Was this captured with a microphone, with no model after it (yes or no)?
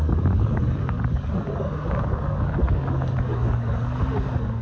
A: no